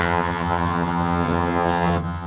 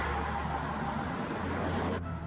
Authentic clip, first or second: second